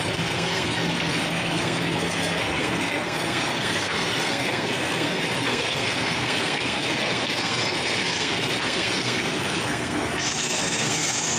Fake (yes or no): yes